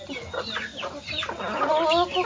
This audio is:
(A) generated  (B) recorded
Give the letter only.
B